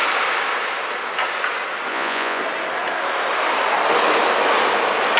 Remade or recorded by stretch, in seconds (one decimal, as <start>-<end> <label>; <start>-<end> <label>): 0.0-1.9 recorded; 1.9-2.4 remade; 2.4-5.2 recorded